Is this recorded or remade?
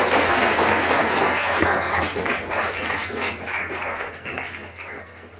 remade